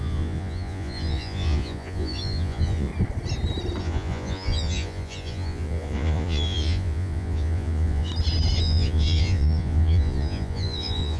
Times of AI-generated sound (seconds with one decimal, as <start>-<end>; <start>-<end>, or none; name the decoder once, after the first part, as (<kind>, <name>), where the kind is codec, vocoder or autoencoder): 0.0-2.9 (vocoder, Vocos); 3.8-8.1; 8.6-11.2